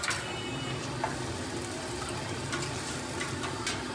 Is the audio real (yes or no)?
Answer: yes